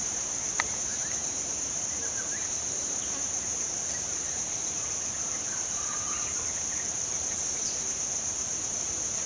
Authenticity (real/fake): fake